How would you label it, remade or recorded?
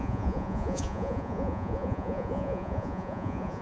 remade